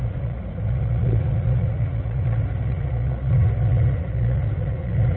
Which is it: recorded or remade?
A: remade